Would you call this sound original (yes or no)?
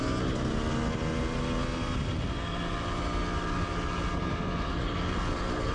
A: yes